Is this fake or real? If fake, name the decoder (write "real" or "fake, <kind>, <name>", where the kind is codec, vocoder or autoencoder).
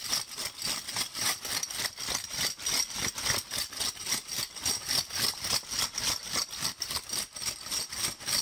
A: real